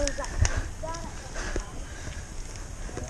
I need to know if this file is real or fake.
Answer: real